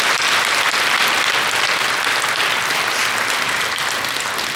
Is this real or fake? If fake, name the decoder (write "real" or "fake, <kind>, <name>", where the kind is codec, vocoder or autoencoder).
real